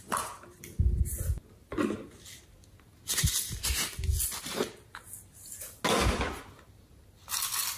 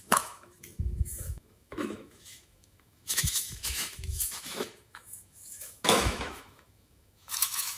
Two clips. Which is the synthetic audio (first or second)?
second